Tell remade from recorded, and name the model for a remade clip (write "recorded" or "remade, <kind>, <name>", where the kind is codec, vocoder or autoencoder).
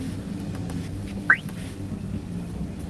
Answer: recorded